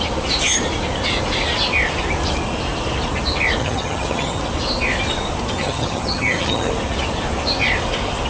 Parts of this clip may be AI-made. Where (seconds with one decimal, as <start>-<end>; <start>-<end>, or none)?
3.6-4.4; 5.6-6.7